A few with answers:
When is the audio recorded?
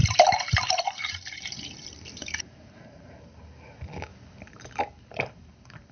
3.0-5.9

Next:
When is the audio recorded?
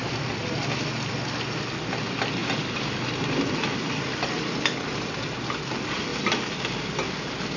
1.1-7.6